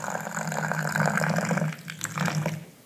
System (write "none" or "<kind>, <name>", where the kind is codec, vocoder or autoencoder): none